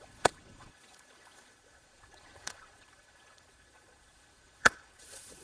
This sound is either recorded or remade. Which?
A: remade